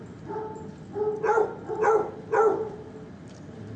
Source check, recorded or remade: recorded